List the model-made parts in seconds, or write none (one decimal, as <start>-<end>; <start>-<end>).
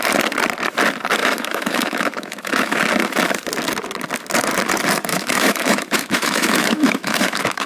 1.2-2.8; 5.1-7.7